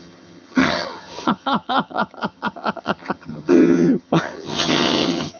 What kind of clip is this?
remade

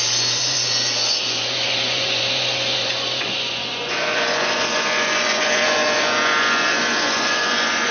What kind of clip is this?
remade